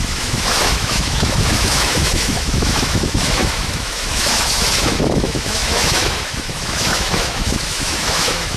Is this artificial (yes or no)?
yes